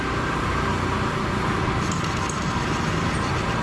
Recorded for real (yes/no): yes